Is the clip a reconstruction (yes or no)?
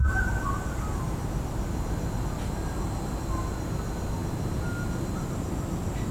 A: no